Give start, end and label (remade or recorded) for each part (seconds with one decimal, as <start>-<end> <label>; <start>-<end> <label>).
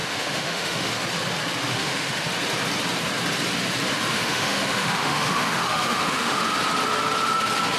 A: 0.0-0.9 remade; 0.9-1.7 recorded; 1.7-2.3 remade; 2.3-4.1 recorded; 4.1-6.4 remade; 6.4-7.8 recorded